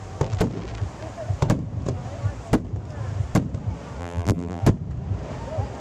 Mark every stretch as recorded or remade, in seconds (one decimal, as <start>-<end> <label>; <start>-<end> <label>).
0.0-4.0 recorded; 4.0-4.6 remade; 4.6-5.8 recorded